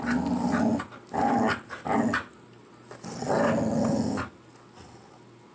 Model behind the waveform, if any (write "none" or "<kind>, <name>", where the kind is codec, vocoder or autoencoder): none